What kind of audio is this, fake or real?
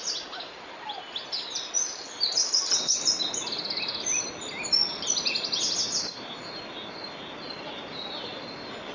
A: real